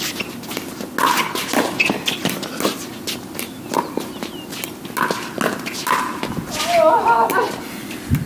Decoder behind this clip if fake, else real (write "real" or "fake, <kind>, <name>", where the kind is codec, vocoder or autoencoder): real